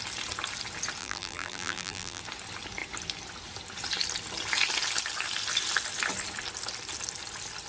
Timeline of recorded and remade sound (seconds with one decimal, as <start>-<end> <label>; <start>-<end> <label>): 0.0-1.0 recorded; 1.0-2.2 remade; 2.2-7.7 recorded

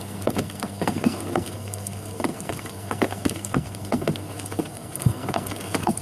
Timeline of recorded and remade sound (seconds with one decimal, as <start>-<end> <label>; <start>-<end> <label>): 0.0-6.0 remade